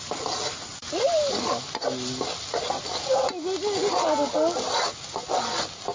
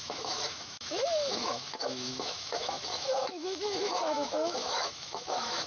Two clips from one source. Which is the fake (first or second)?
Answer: second